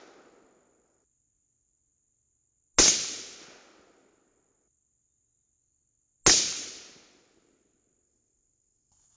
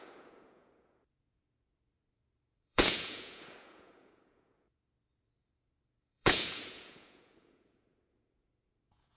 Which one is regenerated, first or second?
second